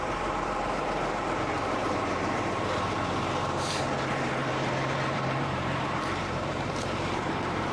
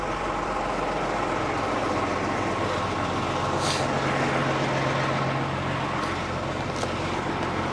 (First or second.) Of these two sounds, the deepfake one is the first